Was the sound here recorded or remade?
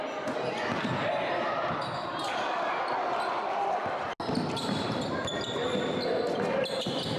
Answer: recorded